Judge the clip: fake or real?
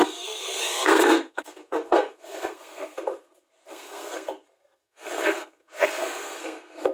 fake